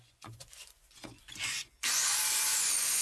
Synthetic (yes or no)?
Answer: yes